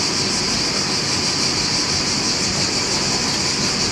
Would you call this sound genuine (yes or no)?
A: yes